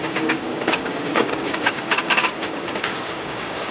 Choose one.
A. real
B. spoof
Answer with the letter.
B